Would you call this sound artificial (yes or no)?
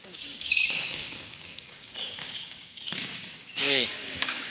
yes